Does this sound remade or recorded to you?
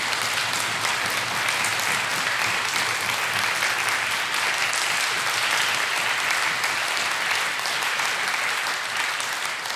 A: recorded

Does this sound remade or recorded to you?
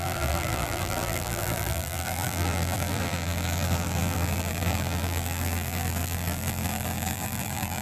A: remade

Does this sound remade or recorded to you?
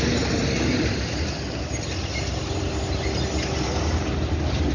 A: recorded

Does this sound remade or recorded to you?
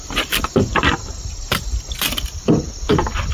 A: remade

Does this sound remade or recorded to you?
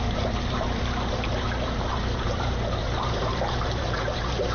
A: remade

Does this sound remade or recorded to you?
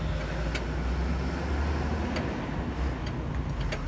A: recorded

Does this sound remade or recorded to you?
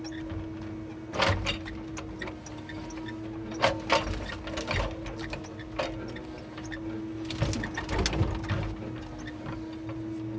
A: recorded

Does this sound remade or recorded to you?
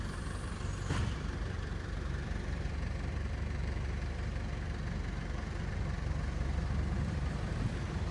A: remade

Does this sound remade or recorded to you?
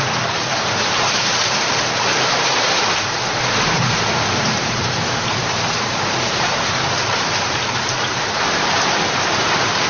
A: remade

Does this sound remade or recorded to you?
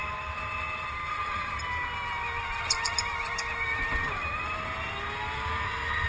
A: recorded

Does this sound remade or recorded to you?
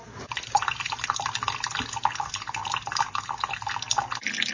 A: recorded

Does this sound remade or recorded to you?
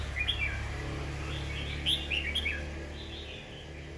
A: recorded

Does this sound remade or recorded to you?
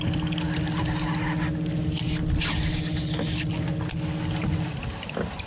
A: recorded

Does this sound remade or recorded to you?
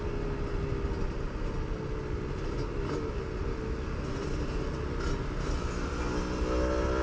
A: recorded